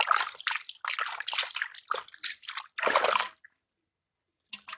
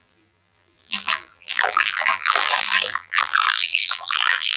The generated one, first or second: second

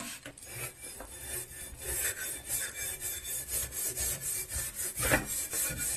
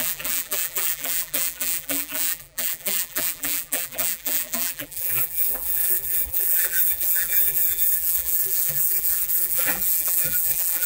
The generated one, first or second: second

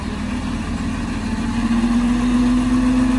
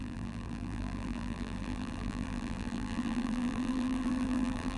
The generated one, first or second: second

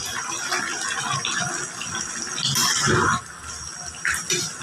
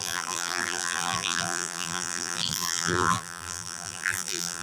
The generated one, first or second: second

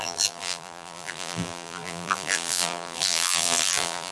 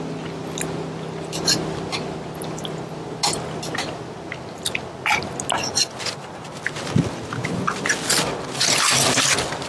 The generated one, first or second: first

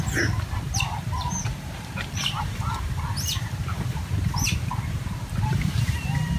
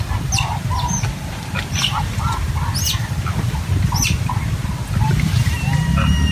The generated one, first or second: first